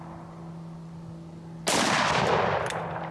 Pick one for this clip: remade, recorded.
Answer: recorded